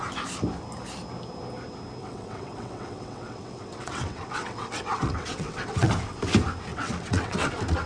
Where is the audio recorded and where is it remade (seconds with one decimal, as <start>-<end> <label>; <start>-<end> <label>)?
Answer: 0.0-2.0 recorded; 2.0-5.9 remade; 5.9-6.7 recorded; 6.7-7.5 remade; 7.5-7.9 recorded